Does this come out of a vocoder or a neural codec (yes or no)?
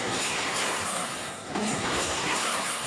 yes